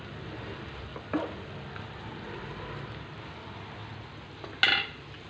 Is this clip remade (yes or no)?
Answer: no